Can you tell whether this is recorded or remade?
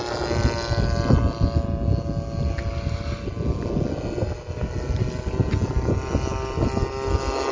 recorded